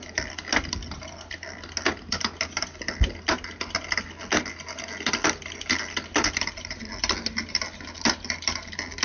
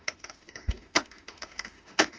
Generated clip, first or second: second